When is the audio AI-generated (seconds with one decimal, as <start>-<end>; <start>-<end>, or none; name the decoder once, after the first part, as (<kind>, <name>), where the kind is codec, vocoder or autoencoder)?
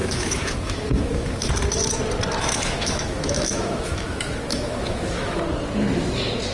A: 0.0-1.5 (autoencoder, DAC-VAE); 2.4-5.4